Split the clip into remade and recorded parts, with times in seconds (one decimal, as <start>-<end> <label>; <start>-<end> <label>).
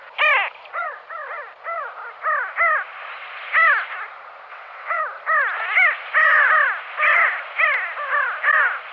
0.0-4.5 recorded; 4.5-5.0 remade; 5.0-8.9 recorded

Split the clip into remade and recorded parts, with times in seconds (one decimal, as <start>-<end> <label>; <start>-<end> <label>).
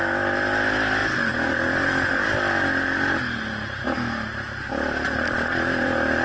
0.0-6.2 recorded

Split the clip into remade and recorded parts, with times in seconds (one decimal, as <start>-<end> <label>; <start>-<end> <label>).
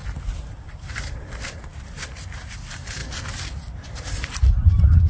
0.0-5.1 remade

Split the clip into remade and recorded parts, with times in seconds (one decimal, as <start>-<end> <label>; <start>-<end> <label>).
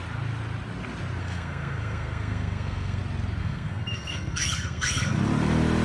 0.0-1.2 recorded; 1.2-3.0 remade; 3.0-3.4 recorded; 3.4-5.1 remade; 5.1-5.8 recorded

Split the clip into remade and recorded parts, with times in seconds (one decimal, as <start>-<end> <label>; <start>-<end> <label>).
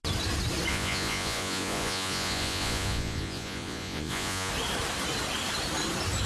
0.0-0.7 recorded; 0.7-4.5 remade; 4.5-6.3 recorded